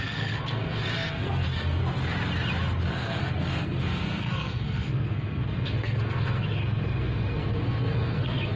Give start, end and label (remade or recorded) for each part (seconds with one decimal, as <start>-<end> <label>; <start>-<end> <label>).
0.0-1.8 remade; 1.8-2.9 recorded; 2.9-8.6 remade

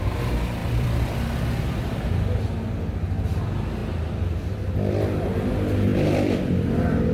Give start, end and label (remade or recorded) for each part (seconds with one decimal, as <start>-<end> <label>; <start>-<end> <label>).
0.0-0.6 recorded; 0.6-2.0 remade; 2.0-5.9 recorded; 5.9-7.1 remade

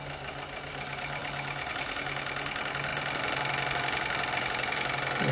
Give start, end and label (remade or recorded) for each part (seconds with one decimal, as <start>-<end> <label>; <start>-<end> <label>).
0.0-5.3 recorded